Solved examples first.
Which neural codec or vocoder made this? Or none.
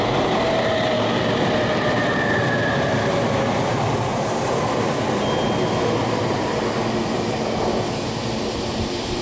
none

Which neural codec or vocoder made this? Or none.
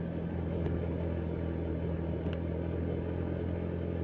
none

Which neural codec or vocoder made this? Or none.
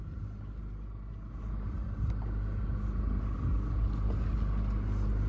none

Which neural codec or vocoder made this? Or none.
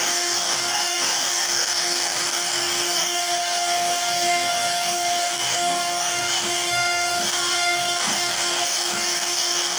codec, DAC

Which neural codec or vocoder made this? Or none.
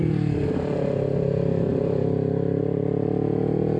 none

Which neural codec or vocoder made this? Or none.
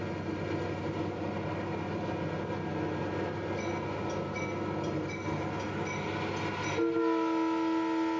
none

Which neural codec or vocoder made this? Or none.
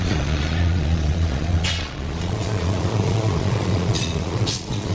vocoder, Vocos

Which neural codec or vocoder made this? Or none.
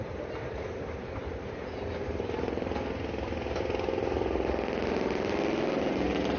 none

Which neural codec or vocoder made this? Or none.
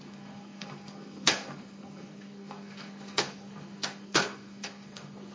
codec, SNAC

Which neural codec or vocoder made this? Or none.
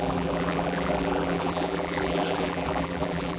vocoder, BigVGAN v2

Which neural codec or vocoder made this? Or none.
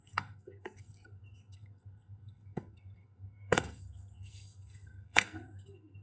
codec, SNAC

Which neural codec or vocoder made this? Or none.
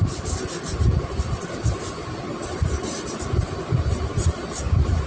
none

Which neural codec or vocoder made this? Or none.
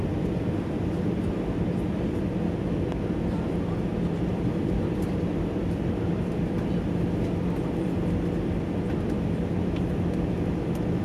vocoder, BigVGAN v2